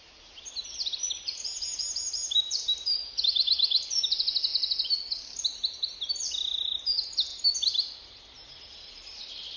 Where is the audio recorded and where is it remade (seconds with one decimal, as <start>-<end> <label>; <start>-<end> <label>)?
0.0-9.6 recorded